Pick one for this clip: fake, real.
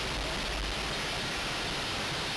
real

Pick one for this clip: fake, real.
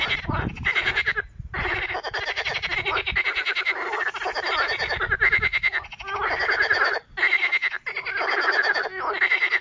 real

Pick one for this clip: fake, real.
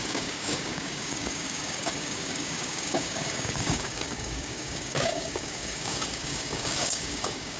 fake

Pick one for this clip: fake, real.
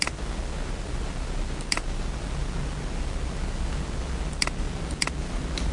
real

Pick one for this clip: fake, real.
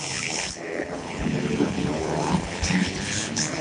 fake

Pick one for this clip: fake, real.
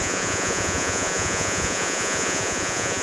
fake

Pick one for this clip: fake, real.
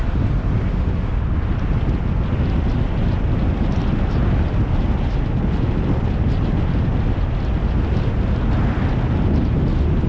real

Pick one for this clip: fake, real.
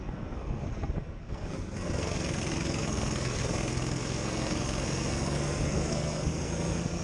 fake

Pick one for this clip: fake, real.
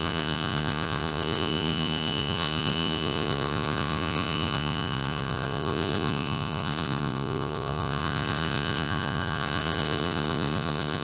fake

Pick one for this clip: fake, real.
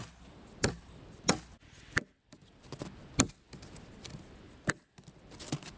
real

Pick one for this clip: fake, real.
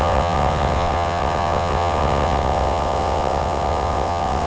fake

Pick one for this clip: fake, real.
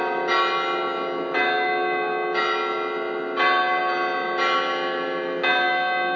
real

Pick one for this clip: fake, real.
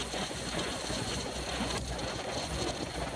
fake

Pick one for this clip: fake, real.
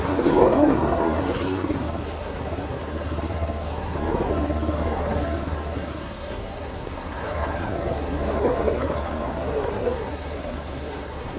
fake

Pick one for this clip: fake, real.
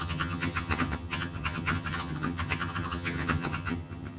fake